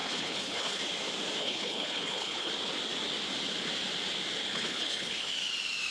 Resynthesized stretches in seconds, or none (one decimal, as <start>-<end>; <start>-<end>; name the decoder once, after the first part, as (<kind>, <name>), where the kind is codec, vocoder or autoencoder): 0.0-0.8 (codec, HILCodec); 1.4-2.5; 4.5-5.3

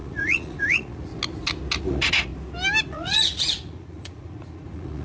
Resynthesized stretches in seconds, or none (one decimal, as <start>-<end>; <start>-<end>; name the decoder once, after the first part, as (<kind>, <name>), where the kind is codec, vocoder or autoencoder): 0.0-1.1 (vocoder, Vocos); 1.8-2.3; 2.9-5.0

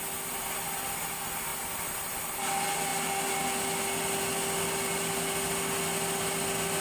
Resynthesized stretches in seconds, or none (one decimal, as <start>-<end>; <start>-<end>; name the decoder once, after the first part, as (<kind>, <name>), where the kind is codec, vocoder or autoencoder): none